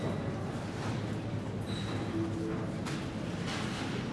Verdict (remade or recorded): recorded